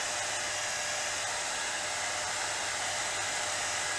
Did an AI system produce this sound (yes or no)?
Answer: no